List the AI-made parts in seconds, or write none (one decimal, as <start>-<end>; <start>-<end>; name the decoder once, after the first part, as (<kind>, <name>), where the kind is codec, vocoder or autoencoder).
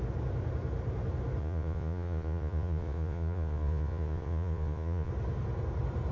1.4-5.1 (vocoder, Vocos)